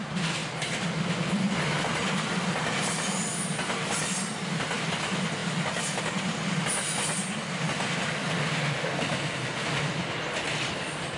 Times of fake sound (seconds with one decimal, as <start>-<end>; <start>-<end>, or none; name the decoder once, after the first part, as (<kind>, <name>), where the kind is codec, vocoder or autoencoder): none